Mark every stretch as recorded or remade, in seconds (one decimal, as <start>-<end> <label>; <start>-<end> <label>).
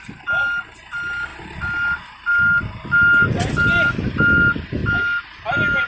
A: 0.0-5.9 recorded